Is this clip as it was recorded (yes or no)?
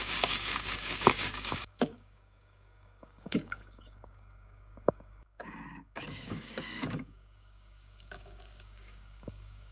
no